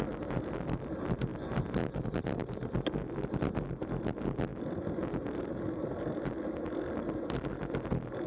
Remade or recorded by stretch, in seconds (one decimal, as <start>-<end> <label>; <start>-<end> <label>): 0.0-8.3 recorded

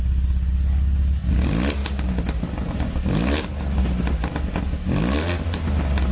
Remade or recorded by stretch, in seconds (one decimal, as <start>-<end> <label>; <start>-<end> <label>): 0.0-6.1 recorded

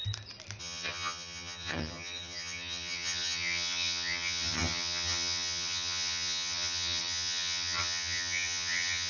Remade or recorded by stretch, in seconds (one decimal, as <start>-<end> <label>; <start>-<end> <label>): 0.0-0.6 recorded; 0.6-9.1 remade